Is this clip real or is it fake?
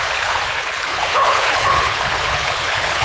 fake